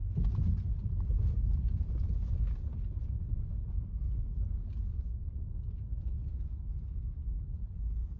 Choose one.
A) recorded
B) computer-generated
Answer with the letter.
A